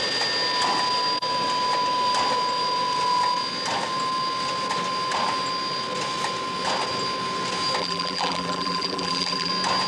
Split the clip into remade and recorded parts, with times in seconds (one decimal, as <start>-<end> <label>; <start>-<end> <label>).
0.0-7.8 recorded; 7.8-9.5 remade; 9.5-9.9 recorded

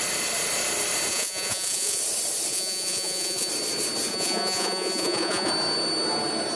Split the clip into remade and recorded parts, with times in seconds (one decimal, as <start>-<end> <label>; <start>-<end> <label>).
0.0-1.1 recorded; 1.1-2.0 remade; 2.0-2.5 recorded; 2.5-3.5 remade; 3.5-4.1 recorded; 4.1-5.5 remade; 5.5-6.6 recorded